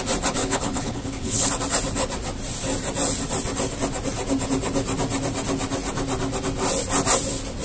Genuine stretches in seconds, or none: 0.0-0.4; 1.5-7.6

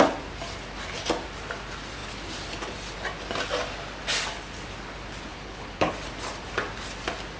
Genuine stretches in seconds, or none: 0.0-5.3; 5.9-7.4